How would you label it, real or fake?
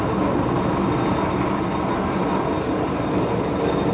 real